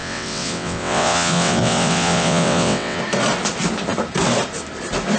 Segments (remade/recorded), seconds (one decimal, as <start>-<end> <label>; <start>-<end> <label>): 0.0-3.0 remade; 3.0-5.2 recorded